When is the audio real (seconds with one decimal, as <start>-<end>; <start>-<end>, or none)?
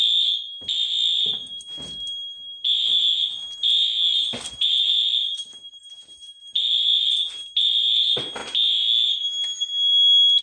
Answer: 0.0-10.4